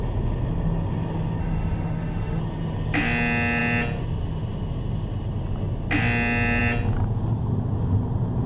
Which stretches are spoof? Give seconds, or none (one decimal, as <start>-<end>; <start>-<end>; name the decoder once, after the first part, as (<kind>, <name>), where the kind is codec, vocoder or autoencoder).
1.4-2.4 (autoencoder, DAC-VAE)